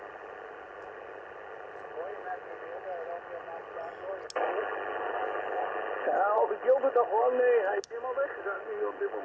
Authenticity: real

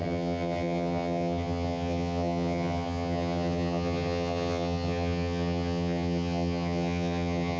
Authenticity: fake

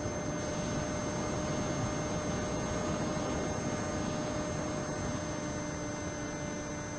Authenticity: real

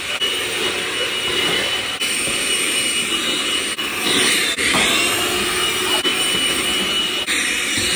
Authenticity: fake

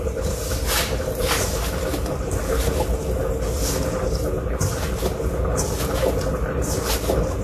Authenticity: real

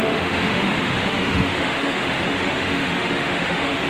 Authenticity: fake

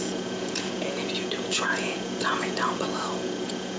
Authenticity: fake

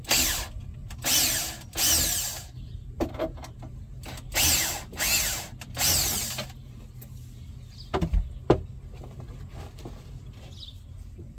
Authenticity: real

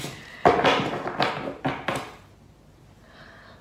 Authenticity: real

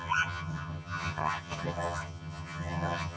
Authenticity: fake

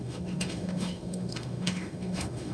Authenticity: fake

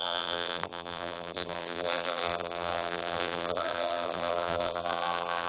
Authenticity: fake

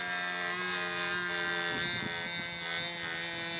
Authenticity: real